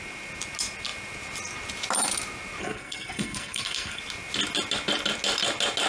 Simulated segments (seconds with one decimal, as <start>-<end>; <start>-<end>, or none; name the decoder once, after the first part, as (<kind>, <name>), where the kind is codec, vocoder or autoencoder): 2.6-4.0 (codec, SNAC)